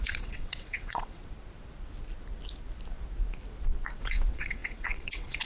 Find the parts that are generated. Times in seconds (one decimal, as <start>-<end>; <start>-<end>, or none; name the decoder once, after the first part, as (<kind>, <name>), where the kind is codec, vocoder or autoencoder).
0.0-1.2 (vocoder, WaveNeXt); 4.0-5.5

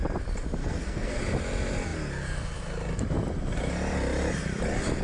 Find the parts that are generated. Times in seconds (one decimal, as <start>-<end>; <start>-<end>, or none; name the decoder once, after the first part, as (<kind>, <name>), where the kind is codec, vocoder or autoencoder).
0.6-1.2 (codec, SNAC)

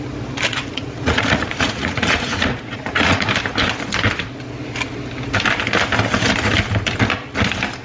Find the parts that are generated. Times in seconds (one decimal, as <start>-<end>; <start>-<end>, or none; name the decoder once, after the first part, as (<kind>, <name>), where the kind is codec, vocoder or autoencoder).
0.5-3.3 (vocoder, Vocos)

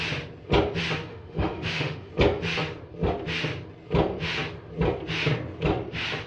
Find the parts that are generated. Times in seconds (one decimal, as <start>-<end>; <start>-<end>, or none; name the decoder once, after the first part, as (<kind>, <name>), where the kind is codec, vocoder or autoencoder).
1.1-2.1 (autoencoder, DAC-VAE)